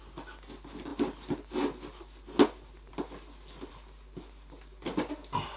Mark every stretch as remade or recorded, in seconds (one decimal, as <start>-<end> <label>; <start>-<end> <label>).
0.0-5.6 recorded